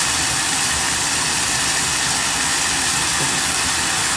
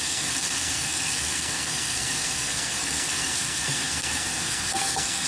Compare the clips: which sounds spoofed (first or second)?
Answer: second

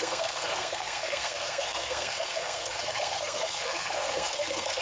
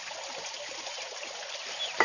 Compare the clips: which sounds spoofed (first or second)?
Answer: first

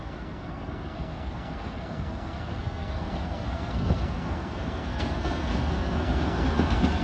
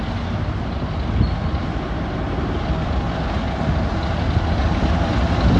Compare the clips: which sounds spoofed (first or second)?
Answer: first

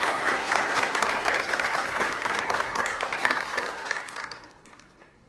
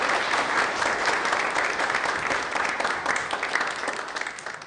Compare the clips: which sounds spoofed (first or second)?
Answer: first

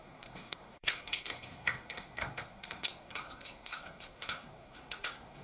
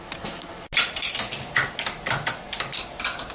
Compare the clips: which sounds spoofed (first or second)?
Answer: first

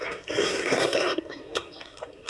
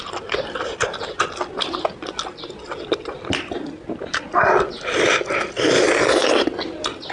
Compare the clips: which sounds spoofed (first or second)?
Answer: first